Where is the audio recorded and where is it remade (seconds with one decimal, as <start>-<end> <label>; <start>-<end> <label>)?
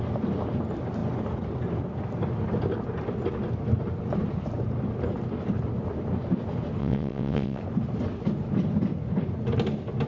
0.0-6.8 recorded; 6.8-7.6 remade; 7.6-10.1 recorded